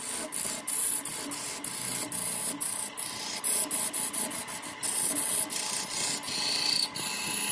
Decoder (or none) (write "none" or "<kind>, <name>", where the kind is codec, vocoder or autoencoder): none